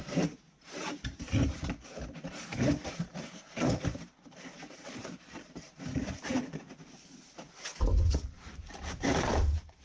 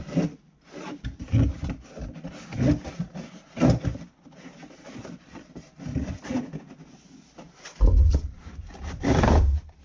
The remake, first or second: first